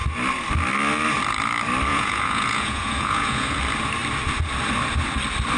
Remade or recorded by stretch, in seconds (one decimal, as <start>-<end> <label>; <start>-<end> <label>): 0.0-1.9 recorded; 1.9-3.6 remade; 3.6-5.6 recorded